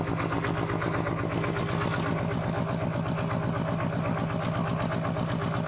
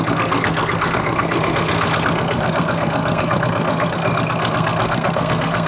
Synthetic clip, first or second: second